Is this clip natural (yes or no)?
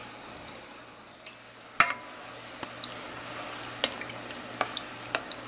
yes